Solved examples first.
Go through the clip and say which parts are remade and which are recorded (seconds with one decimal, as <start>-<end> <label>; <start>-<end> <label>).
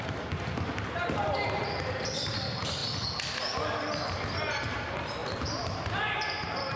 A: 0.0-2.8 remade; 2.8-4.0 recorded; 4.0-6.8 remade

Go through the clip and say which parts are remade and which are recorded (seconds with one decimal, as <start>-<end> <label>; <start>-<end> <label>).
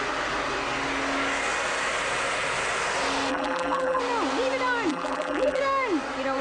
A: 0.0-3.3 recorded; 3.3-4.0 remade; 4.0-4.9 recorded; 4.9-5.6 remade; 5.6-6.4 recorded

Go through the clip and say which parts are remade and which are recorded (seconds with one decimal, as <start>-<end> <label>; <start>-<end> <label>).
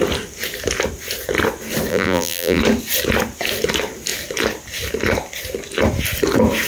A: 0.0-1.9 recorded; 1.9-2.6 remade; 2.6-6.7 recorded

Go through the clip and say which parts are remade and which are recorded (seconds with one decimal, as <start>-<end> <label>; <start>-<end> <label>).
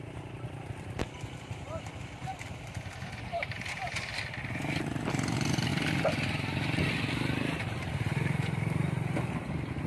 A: 0.0-9.9 remade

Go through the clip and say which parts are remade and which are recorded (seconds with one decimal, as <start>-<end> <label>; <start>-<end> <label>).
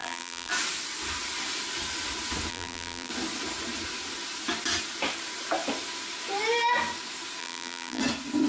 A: 0.0-0.5 remade; 0.5-2.5 recorded; 2.5-3.1 remade; 3.1-7.4 recorded; 7.4-8.0 remade; 8.0-8.5 recorded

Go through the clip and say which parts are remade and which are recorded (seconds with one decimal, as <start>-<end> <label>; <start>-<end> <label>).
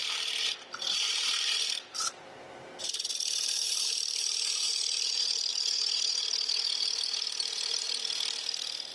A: 0.0-8.9 recorded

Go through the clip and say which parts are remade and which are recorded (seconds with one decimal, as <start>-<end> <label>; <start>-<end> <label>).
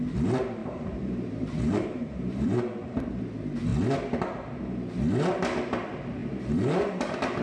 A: 0.0-0.6 recorded; 0.6-3.2 remade; 3.2-7.4 recorded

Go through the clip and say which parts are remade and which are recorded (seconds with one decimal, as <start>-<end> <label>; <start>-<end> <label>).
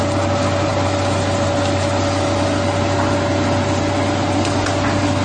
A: 0.0-5.2 recorded